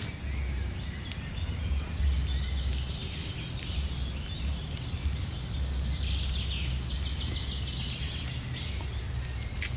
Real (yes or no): yes